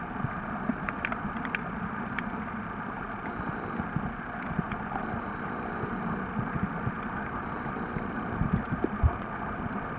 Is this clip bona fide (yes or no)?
yes